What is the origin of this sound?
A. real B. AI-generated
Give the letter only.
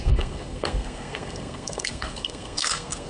B